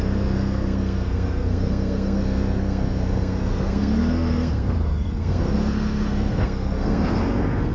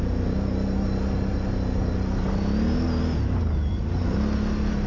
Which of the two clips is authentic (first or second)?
second